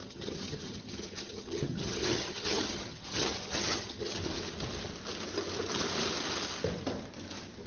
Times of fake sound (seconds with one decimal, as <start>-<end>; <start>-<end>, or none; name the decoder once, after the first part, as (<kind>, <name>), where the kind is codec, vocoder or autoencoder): 0.0-4.2 (vocoder, HiFi-GAN)